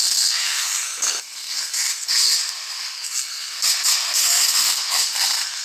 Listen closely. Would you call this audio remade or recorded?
remade